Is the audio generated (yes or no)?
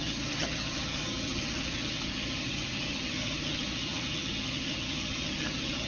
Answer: yes